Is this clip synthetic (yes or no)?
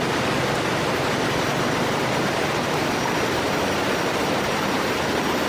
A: no